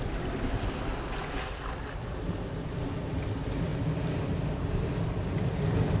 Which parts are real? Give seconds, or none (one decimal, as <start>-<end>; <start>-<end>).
0.0-6.0